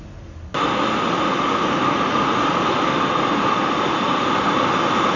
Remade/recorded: recorded